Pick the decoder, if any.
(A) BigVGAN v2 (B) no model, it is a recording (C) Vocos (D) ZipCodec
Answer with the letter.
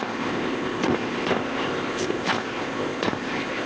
D